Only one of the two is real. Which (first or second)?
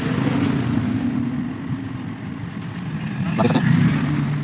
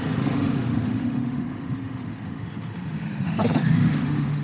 first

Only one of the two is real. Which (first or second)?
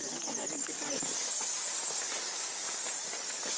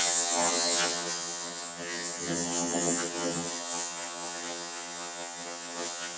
first